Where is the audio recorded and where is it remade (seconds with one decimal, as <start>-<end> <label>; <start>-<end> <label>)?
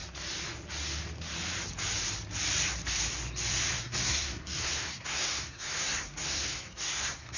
0.0-3.8 recorded; 3.8-7.4 remade